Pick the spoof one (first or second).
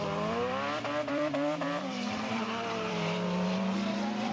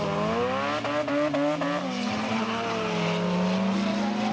first